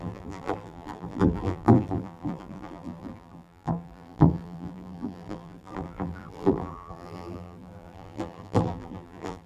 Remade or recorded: remade